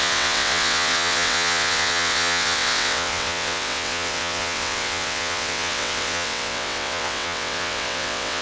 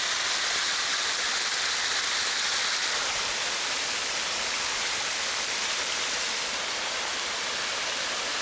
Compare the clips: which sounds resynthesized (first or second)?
first